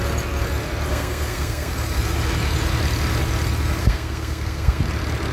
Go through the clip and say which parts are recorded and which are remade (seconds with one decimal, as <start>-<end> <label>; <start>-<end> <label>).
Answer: 0.0-0.9 recorded; 0.9-1.7 remade; 1.7-3.8 recorded; 3.8-4.8 remade; 4.8-5.3 recorded